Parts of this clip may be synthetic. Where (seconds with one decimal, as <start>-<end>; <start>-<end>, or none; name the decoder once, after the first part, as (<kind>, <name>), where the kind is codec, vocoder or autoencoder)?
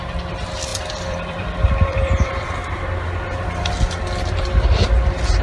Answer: 0.7-3.7 (vocoder, BigVGAN v2)